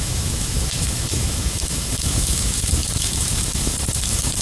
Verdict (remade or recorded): remade